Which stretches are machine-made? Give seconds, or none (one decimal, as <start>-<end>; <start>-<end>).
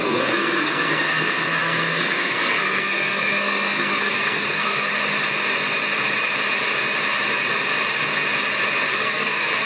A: 0.0-4.9; 8.9-9.7